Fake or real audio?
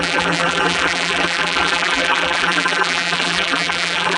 fake